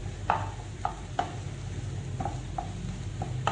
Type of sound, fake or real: real